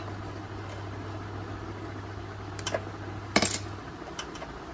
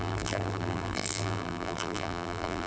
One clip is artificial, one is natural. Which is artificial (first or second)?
second